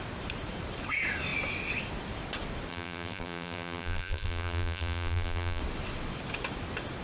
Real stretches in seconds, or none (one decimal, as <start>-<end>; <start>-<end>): 0.0-2.7; 5.6-7.0